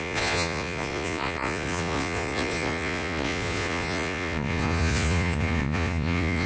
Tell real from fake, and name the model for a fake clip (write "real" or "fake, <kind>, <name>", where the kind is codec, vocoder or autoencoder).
fake, vocoder, Vocos